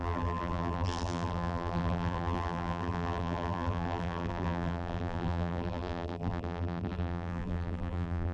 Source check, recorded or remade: remade